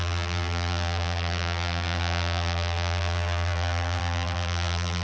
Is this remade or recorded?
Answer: remade